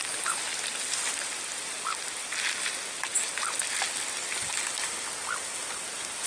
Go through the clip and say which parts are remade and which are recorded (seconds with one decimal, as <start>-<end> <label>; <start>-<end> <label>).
0.0-6.3 recorded